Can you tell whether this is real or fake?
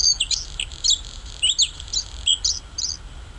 real